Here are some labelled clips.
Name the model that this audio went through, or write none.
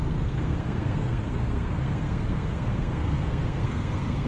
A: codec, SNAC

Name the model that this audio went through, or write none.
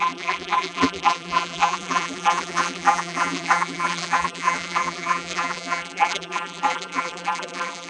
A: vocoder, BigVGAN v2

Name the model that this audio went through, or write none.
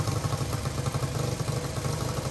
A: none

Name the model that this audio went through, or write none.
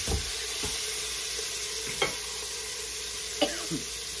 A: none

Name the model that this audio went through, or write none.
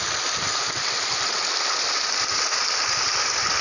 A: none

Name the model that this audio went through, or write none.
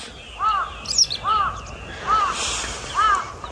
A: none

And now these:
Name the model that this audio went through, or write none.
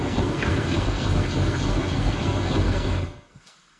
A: codec, SNAC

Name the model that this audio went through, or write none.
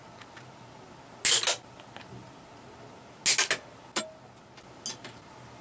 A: none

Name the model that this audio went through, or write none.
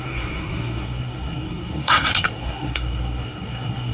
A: codec, SNAC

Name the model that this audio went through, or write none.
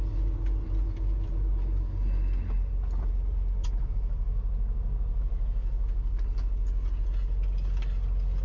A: none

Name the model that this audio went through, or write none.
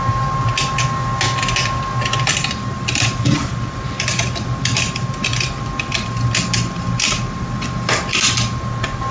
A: none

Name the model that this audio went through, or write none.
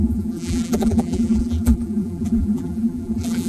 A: vocoder, BigVGAN v2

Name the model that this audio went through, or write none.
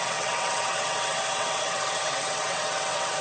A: vocoder, WaveNeXt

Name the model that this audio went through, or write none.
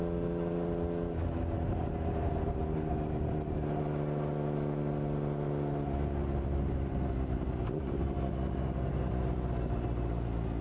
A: none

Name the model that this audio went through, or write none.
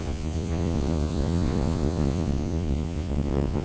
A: vocoder, Vocos